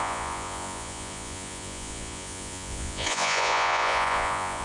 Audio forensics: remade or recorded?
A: remade